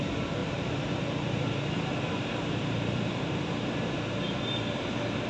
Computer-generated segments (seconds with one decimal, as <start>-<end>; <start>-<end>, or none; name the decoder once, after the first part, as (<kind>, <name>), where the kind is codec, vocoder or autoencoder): 0.4-3.6 (vocoder, BigVGAN v2)